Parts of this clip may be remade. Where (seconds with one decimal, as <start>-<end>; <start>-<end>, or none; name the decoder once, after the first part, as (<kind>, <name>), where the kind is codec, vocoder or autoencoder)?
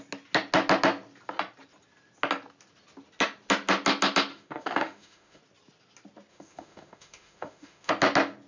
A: 4.3-5.4 (autoencoder, DAC-VAE); 6.3-7.9